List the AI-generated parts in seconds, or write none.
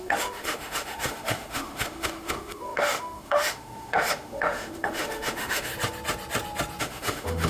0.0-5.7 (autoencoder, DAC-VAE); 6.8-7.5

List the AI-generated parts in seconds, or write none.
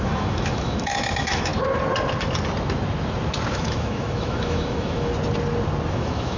0.0-1.5 (autoencoder, DAC-VAE); 3.5-5.1; 5.9-6.4